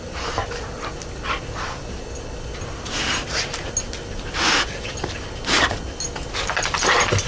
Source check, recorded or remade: recorded